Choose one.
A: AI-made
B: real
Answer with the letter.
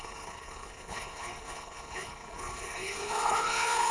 A